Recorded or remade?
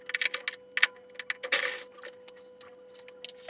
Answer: recorded